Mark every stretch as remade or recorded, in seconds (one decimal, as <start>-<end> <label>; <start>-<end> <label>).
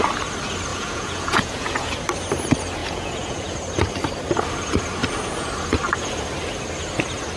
0.0-0.7 recorded; 0.7-1.9 remade; 1.9-2.8 recorded; 2.8-3.5 remade; 3.5-7.4 recorded